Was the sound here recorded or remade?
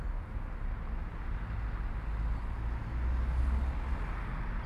recorded